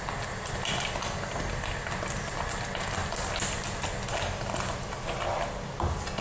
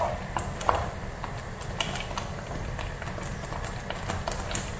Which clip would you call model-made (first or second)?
second